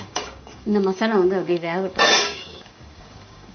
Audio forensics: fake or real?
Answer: fake